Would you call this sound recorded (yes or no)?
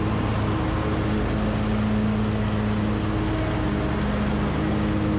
yes